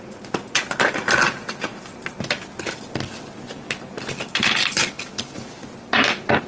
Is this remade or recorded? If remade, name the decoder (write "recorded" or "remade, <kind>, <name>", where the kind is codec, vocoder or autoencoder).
recorded